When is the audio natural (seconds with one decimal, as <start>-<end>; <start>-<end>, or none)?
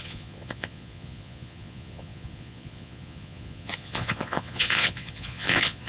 none